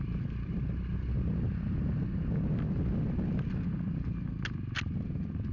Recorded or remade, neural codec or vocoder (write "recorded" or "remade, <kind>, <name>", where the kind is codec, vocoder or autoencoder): recorded